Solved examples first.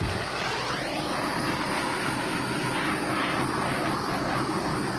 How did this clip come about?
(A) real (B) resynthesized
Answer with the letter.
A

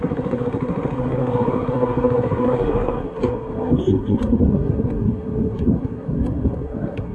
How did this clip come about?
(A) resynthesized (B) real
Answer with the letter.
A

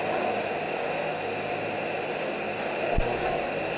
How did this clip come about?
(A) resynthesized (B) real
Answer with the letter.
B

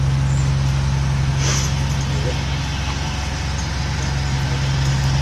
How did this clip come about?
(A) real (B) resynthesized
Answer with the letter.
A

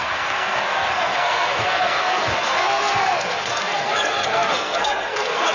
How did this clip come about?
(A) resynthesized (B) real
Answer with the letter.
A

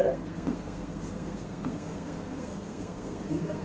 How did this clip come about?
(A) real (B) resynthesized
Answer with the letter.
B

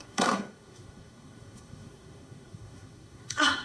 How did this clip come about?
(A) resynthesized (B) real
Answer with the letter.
A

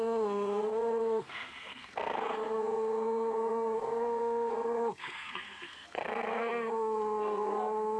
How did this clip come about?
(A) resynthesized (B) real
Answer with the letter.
A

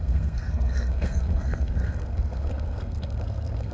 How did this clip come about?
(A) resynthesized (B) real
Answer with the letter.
A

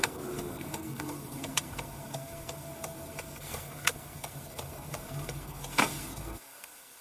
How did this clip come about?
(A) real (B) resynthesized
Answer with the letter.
B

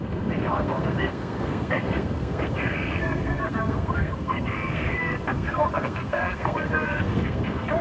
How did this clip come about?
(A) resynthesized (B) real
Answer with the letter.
A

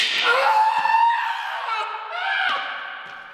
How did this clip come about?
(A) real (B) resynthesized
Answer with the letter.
A